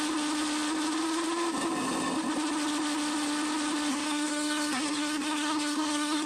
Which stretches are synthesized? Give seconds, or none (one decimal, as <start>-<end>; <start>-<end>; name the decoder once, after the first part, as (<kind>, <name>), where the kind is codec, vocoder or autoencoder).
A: 3.9-6.3 (codec, SNAC)

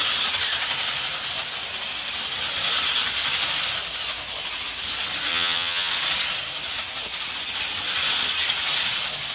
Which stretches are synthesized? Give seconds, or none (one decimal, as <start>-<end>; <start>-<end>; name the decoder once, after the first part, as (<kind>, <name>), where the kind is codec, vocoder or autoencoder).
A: 5.3-5.9 (vocoder, HiFi-GAN)